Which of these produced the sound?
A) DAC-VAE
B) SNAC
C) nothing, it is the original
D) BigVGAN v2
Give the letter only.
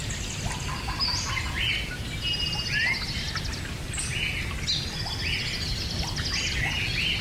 C